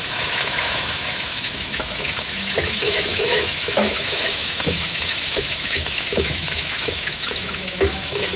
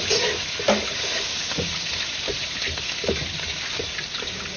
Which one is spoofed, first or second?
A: first